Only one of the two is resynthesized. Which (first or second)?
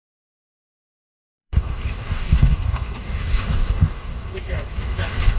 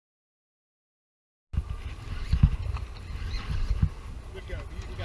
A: first